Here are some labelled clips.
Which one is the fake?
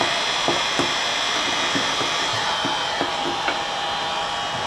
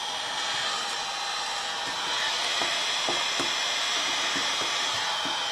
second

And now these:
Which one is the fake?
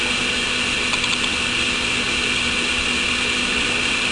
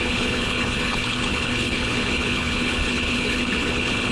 second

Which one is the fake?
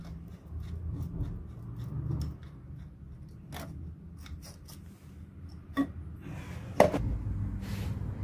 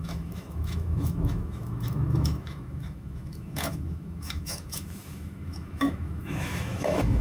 second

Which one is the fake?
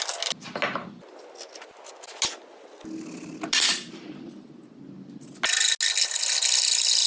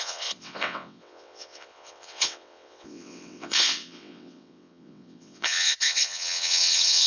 second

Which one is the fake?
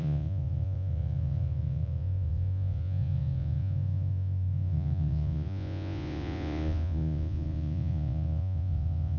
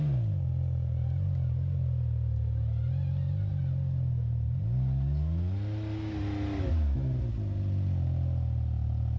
first